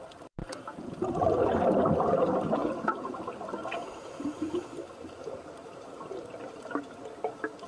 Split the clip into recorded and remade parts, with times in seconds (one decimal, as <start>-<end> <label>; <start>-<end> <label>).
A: 0.0-0.4 recorded; 0.4-1.0 remade; 1.0-2.6 recorded; 2.6-3.2 remade; 3.2-3.6 recorded; 3.6-4.7 remade; 4.7-7.7 recorded